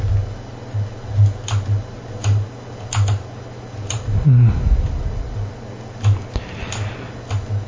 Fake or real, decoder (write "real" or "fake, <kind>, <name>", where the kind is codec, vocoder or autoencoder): real